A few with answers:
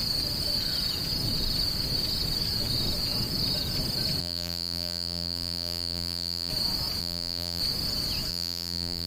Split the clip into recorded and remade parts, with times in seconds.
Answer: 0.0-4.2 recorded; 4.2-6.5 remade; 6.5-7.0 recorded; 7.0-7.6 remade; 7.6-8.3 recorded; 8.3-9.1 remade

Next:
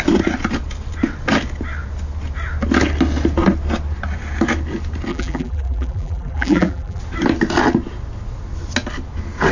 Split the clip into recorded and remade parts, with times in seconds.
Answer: 0.0-5.1 recorded; 5.1-7.0 remade; 7.0-9.5 recorded

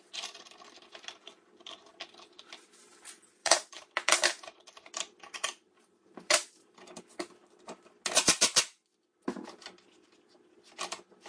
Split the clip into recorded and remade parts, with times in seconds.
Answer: 0.0-1.2 recorded; 1.2-2.4 remade; 2.4-3.4 recorded; 3.4-7.0 remade; 7.0-11.3 recorded

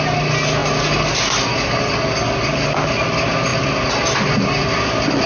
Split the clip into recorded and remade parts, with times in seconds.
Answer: 0.0-5.3 recorded

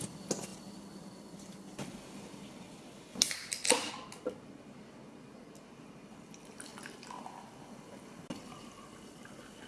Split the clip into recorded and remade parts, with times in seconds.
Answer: 0.0-9.7 recorded

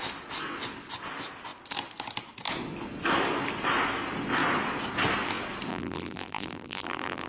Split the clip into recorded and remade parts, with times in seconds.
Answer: 0.0-5.7 recorded; 5.7-7.3 remade

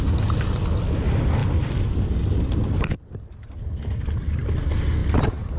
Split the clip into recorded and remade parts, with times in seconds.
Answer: 0.0-1.4 recorded; 1.4-3.6 remade; 3.6-5.6 recorded

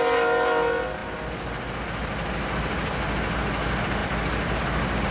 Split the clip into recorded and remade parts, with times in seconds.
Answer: 0.0-5.1 recorded